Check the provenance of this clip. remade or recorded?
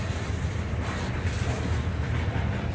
recorded